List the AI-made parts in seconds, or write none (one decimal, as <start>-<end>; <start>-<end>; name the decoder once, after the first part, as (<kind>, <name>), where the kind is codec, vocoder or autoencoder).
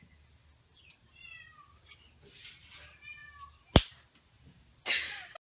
none